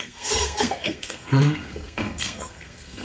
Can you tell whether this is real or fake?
fake